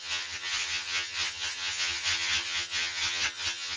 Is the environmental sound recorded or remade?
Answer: remade